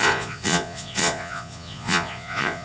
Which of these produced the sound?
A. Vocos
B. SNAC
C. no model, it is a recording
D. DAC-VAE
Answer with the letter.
A